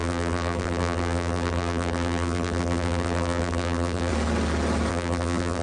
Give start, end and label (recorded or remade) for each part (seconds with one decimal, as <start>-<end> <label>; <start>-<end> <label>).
0.0-4.1 remade; 4.1-4.9 recorded; 4.9-5.6 remade